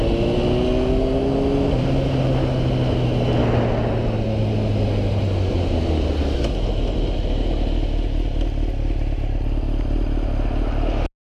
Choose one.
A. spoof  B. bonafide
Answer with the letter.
B